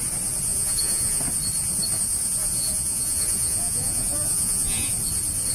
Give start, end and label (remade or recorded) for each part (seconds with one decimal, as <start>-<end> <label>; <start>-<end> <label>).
0.0-0.5 recorded; 0.5-1.2 remade; 1.2-2.4 recorded; 2.4-4.9 remade; 4.9-5.5 recorded